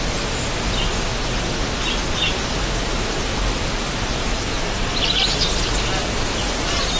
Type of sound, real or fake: real